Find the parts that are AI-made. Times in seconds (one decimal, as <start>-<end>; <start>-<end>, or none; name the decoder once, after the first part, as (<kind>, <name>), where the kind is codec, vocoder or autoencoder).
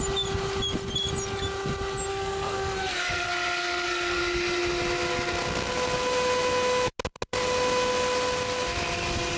2.1-4.2 (codec, SNAC)